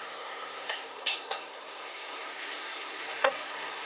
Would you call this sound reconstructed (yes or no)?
yes